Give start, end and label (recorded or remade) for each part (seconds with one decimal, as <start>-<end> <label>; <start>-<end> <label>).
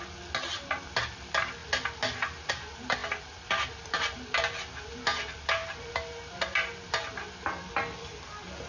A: 0.0-8.7 recorded